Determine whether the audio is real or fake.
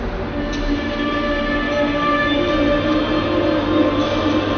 real